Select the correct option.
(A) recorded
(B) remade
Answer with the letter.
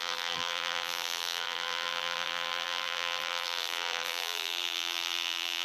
B